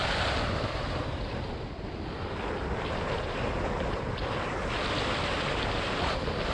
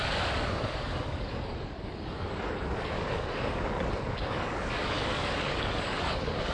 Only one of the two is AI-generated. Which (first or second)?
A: second